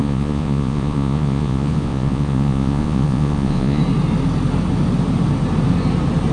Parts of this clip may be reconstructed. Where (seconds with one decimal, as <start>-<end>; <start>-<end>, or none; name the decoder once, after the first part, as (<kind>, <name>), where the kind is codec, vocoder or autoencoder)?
0.0-3.8 (vocoder, Vocos)